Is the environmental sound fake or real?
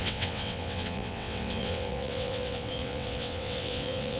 fake